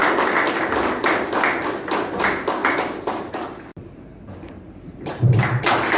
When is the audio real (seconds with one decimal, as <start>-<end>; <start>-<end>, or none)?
0.0-2.2; 2.6-3.3